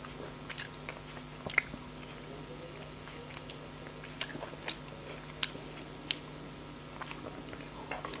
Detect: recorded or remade recorded